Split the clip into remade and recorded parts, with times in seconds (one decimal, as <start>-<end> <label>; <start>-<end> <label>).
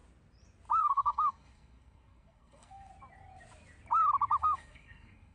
0.0-0.8 recorded; 0.8-2.9 remade; 2.9-4.4 recorded; 4.4-5.3 remade